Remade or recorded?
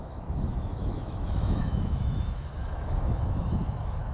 remade